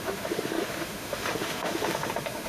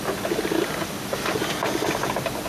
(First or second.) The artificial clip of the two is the first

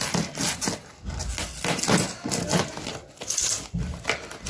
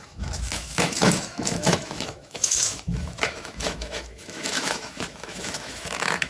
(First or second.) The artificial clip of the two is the second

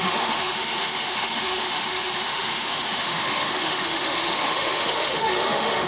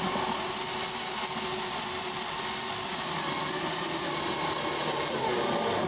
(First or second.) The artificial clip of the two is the first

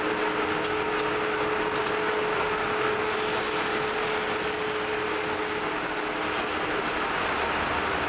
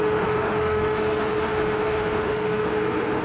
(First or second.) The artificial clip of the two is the second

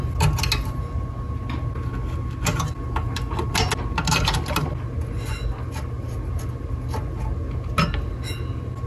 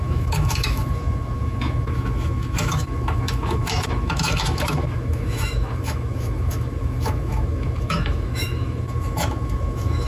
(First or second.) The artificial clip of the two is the second